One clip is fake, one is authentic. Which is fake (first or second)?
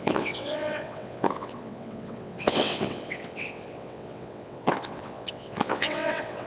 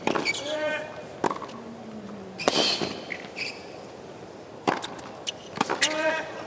first